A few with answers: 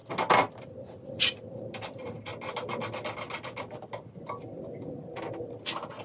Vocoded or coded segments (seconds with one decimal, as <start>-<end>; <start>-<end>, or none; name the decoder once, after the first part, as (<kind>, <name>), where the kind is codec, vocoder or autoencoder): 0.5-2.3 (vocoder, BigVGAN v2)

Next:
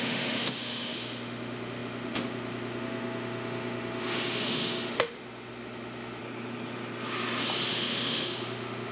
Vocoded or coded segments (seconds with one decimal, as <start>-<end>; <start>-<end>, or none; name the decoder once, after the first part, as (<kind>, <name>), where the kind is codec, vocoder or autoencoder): 0.0-6.2 (autoencoder, DAC-VAE); 7.7-8.9

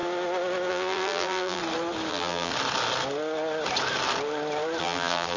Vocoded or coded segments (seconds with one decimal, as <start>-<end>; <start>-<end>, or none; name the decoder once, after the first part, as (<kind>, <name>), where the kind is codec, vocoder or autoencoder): 0.7-1.6 (vocoder, BigVGAN v2); 2.1-2.5; 4.8-5.4

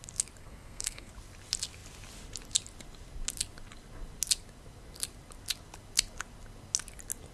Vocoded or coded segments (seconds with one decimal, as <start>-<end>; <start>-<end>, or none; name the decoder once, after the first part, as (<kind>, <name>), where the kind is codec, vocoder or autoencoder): 0.4-1.1 (codec, SNAC)